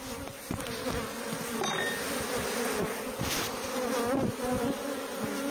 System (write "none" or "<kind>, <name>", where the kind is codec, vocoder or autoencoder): none